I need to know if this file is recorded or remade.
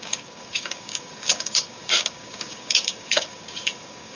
remade